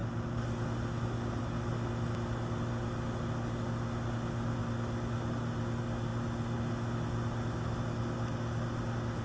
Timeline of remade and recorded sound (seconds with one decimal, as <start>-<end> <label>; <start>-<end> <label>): 0.0-9.2 recorded

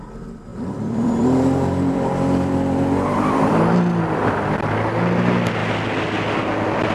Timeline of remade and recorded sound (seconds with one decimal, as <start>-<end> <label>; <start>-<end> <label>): 0.0-0.5 recorded; 0.5-4.0 remade; 4.0-6.9 recorded

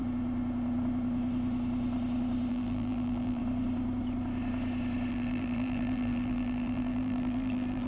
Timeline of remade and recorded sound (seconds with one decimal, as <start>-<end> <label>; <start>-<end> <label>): 0.0-2.5 recorded; 2.5-3.4 remade; 3.4-5.1 recorded; 5.1-7.9 remade

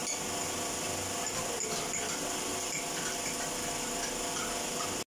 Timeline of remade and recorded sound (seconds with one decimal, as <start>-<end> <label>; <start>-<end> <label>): 0.0-5.1 recorded